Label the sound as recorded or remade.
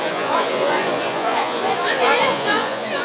remade